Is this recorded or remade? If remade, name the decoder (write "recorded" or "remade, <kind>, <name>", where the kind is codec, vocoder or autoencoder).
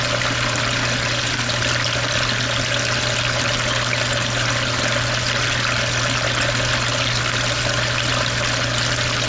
recorded